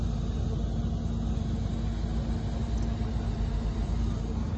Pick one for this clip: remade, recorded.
recorded